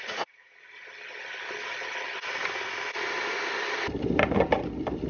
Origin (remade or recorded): recorded